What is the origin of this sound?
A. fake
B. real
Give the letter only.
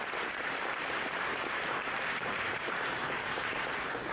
A